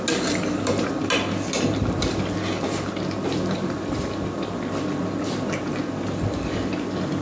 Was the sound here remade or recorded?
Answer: recorded